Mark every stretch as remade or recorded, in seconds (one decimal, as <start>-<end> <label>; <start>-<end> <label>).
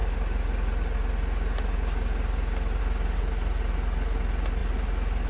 0.0-5.3 recorded